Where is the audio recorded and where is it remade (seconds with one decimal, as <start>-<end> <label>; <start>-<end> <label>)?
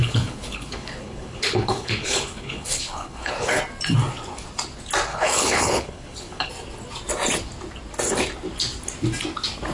0.0-3.6 remade; 3.6-5.1 recorded; 5.1-6.5 remade; 6.5-9.7 recorded